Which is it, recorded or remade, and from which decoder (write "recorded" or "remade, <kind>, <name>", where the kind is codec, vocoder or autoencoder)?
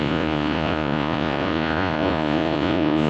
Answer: remade, vocoder, Vocos